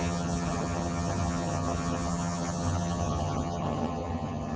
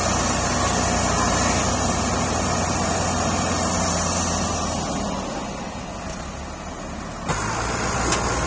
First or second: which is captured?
second